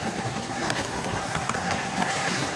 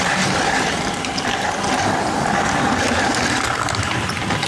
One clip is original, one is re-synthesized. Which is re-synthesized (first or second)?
first